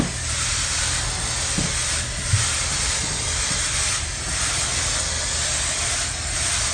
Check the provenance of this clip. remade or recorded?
recorded